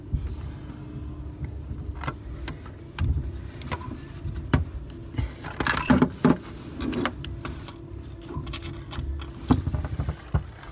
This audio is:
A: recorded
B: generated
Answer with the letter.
A